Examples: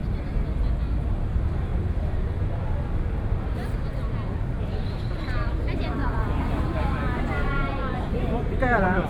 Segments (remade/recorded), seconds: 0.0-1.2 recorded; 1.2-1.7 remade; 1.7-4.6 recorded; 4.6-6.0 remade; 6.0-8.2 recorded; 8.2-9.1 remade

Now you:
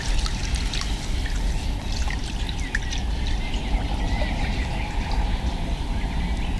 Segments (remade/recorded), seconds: 0.0-6.6 recorded